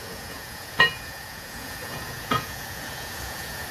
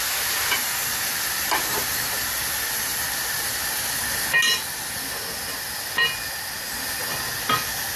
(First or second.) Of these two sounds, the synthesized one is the first